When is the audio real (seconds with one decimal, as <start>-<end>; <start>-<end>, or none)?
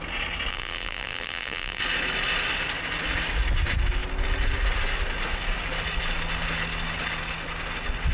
0.0-0.5; 1.8-8.1